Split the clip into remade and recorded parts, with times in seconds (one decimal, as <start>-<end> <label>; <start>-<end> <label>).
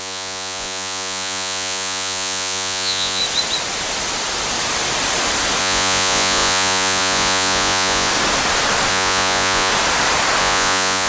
0.0-3.2 remade; 3.2-5.6 recorded; 5.6-8.1 remade; 8.1-8.9 recorded; 8.9-9.7 remade; 9.7-10.4 recorded; 10.4-11.1 remade